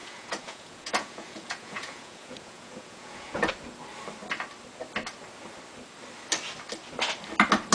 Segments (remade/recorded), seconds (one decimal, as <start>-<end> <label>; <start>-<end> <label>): 0.0-3.5 remade; 3.5-7.7 recorded